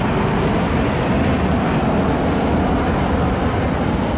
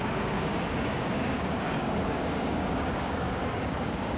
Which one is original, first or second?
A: first